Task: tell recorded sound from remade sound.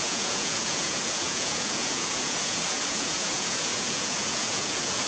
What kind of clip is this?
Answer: remade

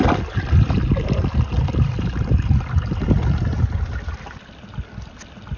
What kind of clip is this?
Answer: recorded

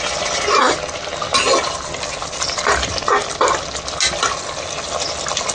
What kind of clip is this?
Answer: recorded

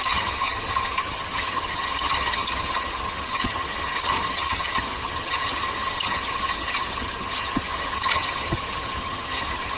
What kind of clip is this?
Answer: remade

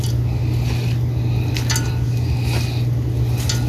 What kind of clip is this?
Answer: recorded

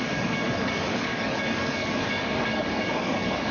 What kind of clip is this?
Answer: remade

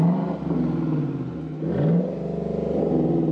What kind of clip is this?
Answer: recorded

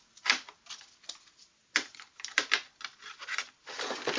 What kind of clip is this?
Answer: recorded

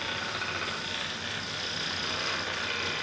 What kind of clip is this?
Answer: recorded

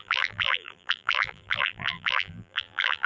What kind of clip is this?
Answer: remade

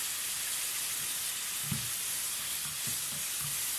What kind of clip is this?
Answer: recorded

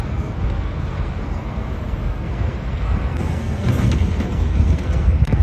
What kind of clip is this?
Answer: remade